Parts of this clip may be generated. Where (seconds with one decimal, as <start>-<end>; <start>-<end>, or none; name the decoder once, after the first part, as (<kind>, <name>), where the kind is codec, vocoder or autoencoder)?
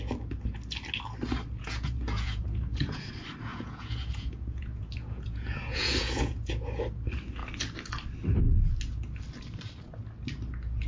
1.6-3.1 (vocoder, Vocos); 3.5-6.8